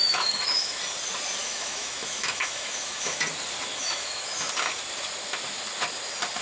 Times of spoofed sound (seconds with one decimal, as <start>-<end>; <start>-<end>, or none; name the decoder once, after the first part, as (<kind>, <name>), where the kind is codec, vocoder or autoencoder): 0.0-0.8 (autoencoder, DAC-VAE); 1.4-3.2; 3.7-4.5